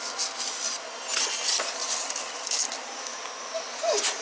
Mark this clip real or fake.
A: real